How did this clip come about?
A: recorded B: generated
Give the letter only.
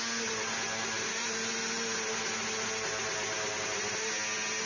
A